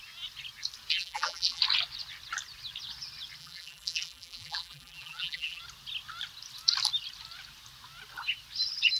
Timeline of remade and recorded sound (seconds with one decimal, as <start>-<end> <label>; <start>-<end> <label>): 0.0-0.9 recorded; 0.9-1.6 remade; 1.6-3.4 recorded; 3.4-5.6 remade; 5.6-9.0 recorded